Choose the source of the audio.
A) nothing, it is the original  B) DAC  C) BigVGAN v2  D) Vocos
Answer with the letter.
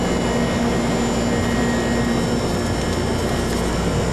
A